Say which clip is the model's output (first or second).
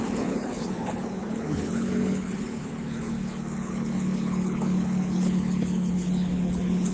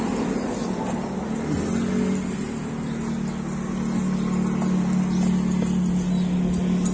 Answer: first